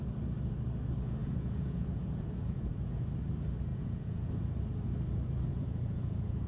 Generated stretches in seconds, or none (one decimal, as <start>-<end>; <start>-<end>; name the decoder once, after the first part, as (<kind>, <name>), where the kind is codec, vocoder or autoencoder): 1.2-2.9 (vocoder, Vocos); 3.7-4.3; 5.5-6.5